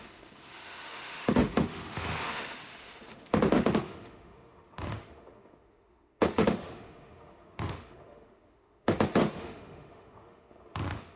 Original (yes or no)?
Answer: no